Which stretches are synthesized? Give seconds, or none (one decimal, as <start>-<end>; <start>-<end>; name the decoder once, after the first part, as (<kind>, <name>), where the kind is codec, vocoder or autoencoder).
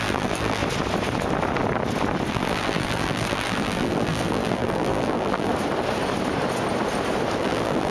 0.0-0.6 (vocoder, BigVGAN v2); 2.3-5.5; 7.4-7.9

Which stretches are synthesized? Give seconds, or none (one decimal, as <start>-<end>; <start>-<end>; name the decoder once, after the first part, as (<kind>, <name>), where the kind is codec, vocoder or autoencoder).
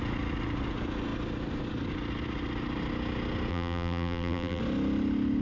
3.5-4.6 (vocoder, BigVGAN v2)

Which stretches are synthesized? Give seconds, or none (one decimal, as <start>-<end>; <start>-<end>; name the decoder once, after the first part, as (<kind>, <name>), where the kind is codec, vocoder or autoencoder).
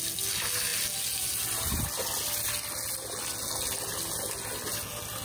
none